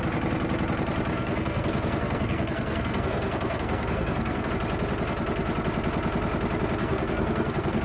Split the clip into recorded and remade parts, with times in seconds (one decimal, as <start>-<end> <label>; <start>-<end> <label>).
0.0-1.1 recorded; 1.1-4.5 remade; 4.5-6.8 recorded; 6.8-7.8 remade